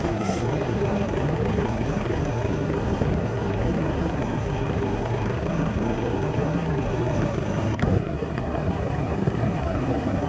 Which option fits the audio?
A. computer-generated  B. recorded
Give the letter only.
A